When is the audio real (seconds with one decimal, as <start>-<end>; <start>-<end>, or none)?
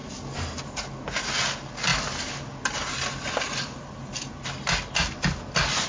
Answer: 0.0-5.9